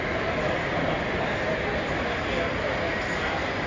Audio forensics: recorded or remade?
recorded